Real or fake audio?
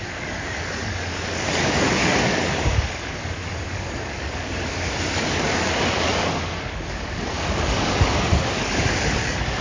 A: fake